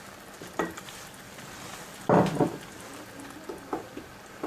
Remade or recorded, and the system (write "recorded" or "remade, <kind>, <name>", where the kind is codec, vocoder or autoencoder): remade, vocoder, BigVGAN v2